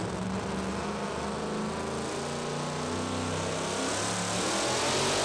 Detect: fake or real real